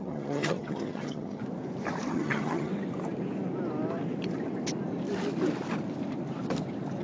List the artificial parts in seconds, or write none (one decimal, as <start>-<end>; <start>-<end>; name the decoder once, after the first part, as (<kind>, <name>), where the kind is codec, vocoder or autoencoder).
0.0-1.4 (vocoder, HiFi-GAN); 2.1-2.7